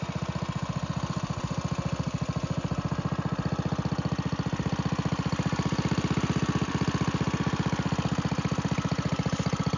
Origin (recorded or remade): recorded